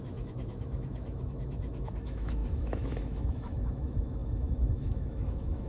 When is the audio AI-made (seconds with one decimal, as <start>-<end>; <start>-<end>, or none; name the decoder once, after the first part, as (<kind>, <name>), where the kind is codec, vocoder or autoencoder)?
0.0-5.7 (autoencoder, DAC-VAE)